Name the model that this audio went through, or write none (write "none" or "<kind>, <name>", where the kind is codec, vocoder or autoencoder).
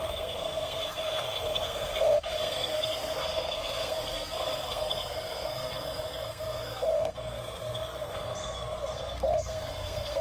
codec, SNAC